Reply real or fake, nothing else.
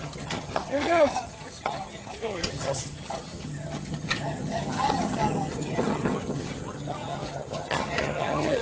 fake